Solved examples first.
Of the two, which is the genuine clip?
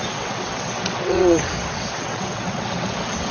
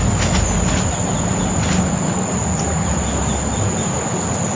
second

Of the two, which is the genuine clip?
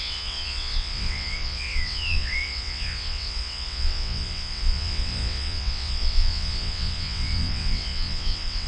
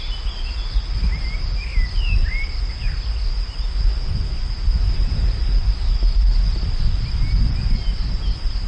second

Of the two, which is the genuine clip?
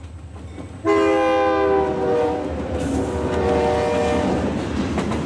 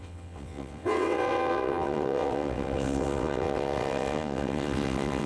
first